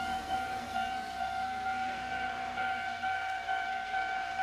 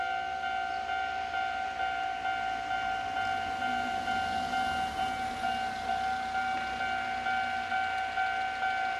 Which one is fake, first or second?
first